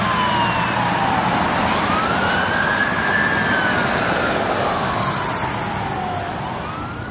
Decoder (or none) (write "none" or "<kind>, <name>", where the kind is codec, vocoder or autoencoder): none